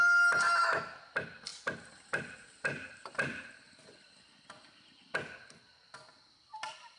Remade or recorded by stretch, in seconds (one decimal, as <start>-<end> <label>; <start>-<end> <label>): 0.0-7.0 recorded